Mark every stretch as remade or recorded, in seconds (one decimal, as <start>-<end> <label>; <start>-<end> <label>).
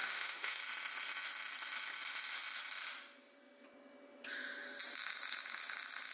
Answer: 0.0-0.6 remade; 0.6-6.1 recorded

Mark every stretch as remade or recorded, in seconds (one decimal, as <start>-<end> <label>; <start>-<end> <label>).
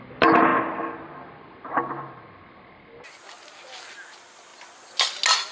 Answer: 0.0-5.5 recorded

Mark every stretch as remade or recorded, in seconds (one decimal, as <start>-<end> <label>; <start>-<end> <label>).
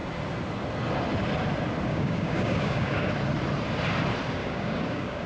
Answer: 0.0-1.9 recorded; 1.9-3.1 remade; 3.1-4.4 recorded; 4.4-5.3 remade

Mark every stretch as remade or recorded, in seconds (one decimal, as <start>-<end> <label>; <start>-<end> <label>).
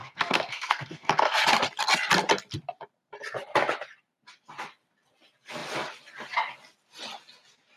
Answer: 0.0-1.4 remade; 1.4-7.8 recorded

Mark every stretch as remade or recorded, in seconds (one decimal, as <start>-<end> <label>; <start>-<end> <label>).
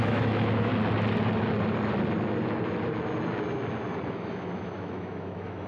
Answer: 0.0-0.7 remade; 0.7-4.1 recorded; 4.1-5.7 remade